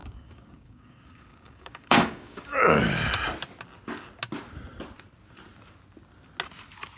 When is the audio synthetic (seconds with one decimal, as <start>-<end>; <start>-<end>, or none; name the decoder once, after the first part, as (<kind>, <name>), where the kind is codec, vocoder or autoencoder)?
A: 0.0-2.8 (codec, DAC)